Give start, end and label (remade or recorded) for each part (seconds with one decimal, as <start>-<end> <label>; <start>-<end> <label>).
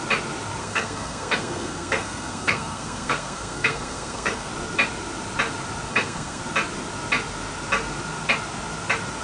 0.0-0.6 recorded; 0.6-4.5 remade; 4.5-5.9 recorded; 5.9-6.4 remade; 6.4-9.2 recorded